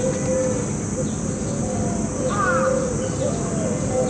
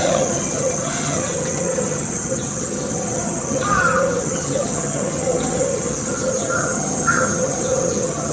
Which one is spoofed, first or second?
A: second